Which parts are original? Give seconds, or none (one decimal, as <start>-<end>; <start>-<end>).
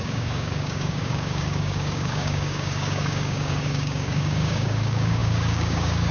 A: none